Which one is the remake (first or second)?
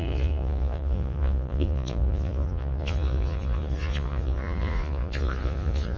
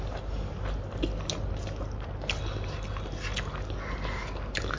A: first